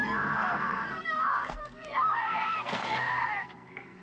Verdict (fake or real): fake